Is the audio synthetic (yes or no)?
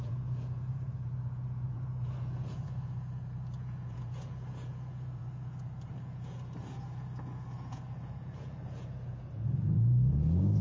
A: yes